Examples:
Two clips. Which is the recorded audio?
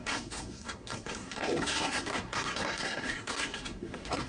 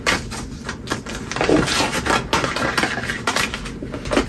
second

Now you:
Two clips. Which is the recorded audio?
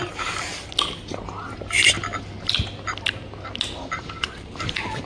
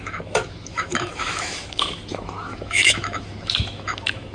first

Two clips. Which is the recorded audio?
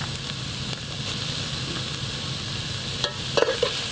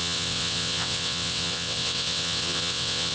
first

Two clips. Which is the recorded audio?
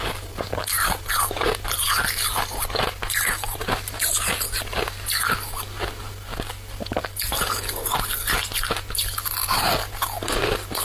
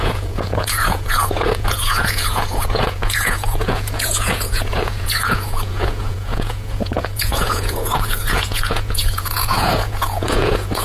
first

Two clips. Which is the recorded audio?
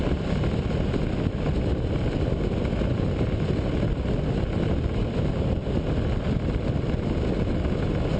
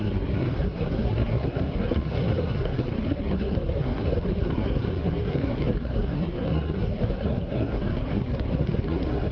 first